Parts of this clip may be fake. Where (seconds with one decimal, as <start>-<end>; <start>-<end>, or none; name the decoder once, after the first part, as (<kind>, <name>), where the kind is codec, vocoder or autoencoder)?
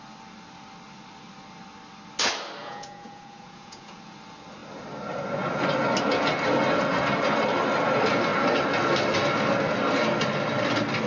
2.6-4.0 (vocoder, Vocos)